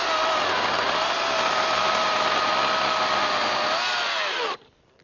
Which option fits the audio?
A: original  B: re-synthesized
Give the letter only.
A